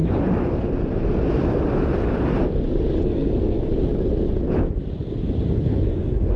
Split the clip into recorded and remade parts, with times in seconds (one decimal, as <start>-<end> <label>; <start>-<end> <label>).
0.0-3.0 recorded; 3.0-3.7 remade; 3.7-5.5 recorded; 5.5-6.4 remade